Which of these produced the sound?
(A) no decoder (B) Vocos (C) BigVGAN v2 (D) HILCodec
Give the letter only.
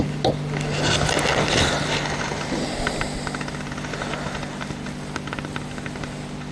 A